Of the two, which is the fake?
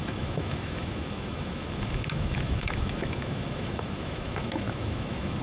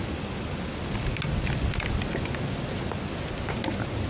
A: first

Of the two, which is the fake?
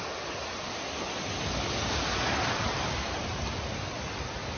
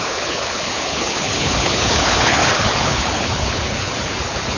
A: second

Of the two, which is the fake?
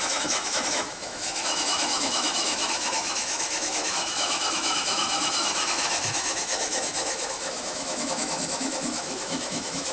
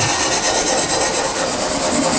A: first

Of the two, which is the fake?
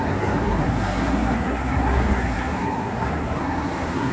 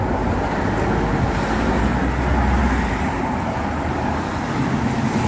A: first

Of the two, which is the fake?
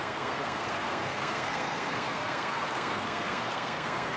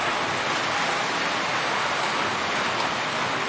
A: first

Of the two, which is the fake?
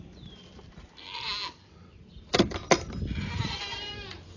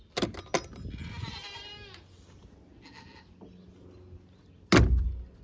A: first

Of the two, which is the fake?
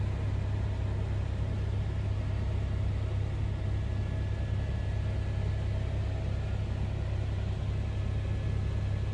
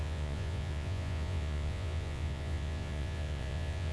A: second